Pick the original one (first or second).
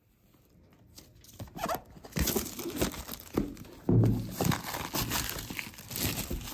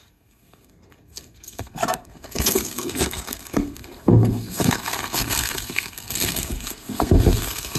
first